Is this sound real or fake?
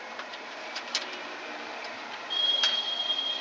fake